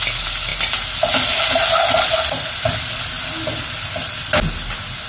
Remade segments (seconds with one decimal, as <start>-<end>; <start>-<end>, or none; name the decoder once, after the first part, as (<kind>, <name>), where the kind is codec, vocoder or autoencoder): none